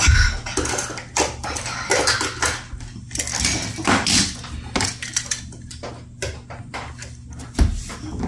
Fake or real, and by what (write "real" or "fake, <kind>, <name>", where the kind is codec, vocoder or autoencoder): real